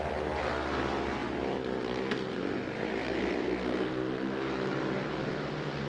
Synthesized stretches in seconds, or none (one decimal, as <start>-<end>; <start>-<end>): none